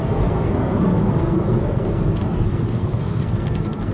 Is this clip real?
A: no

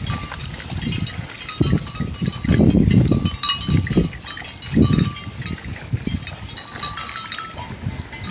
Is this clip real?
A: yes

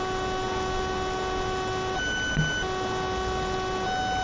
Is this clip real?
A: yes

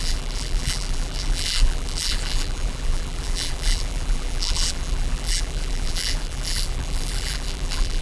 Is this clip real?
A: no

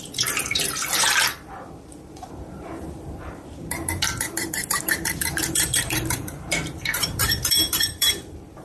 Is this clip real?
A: no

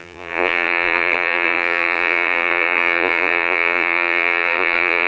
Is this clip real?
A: no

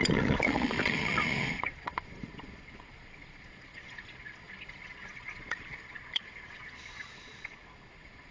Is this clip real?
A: no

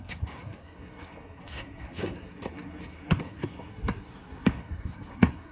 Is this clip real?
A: no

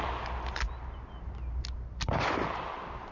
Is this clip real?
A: yes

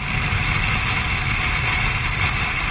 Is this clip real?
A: yes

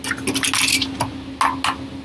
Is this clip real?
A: yes